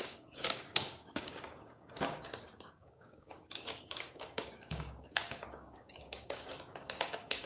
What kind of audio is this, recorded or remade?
remade